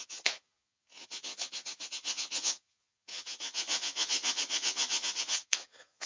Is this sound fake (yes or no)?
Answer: yes